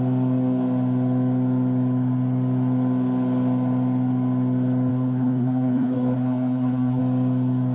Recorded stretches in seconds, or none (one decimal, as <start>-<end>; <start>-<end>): 0.0-4.9; 7.0-7.7